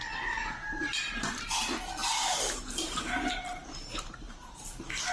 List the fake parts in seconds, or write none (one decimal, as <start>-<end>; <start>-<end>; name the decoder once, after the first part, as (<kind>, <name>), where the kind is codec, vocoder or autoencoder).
0.8-1.4 (vocoder, BigVGAN v2); 2.0-5.1